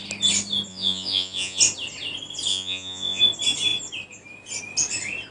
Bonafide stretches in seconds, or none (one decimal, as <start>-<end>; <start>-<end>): 0.0-0.7; 1.6-2.5; 3.2-5.3